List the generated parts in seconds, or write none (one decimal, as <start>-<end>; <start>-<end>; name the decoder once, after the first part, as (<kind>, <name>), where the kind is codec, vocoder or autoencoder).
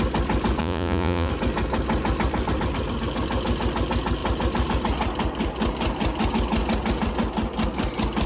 0.6-1.3 (vocoder, Vocos)